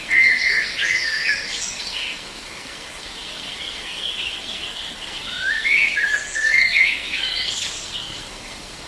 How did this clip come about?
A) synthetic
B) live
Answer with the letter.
A